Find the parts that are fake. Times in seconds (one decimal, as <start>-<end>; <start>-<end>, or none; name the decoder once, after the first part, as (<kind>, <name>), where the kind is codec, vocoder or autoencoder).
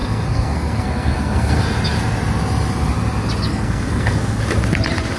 0.0-1.6 (codec, SNAC); 3.5-4.4